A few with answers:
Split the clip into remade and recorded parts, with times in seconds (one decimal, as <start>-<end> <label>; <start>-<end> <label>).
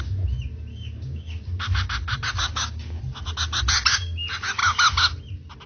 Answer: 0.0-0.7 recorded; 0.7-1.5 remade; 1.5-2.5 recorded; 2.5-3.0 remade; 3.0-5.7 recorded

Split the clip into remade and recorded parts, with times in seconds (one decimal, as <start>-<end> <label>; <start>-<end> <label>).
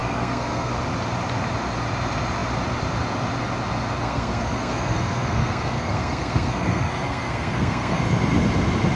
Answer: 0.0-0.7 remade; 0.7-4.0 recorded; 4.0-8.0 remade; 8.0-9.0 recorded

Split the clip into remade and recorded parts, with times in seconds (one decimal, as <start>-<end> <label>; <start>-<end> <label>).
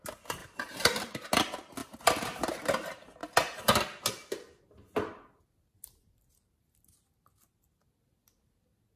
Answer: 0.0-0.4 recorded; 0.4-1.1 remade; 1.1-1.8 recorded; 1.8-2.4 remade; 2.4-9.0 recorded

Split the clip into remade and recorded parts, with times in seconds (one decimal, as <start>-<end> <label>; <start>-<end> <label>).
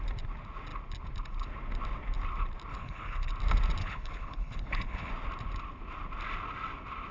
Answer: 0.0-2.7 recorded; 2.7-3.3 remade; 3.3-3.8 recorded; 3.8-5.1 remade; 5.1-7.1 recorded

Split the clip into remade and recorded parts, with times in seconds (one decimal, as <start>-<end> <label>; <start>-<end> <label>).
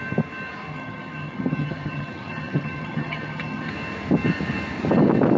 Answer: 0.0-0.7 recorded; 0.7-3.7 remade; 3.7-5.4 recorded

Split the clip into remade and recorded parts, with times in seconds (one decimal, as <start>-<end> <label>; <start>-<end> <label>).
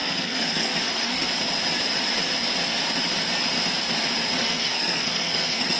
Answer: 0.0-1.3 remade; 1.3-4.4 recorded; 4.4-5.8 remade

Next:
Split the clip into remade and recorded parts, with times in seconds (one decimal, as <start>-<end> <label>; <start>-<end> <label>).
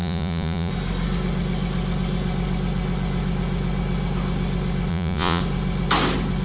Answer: 0.0-0.7 remade; 0.7-4.9 recorded; 4.9-5.4 remade; 5.4-6.4 recorded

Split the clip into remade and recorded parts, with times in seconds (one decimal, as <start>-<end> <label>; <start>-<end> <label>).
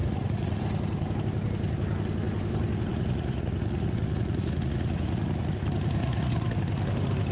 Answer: 0.0-0.6 remade; 0.6-2.9 recorded; 2.9-5.5 remade; 5.5-6.0 recorded; 6.0-6.6 remade; 6.6-7.3 recorded